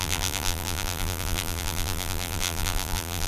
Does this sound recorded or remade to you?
remade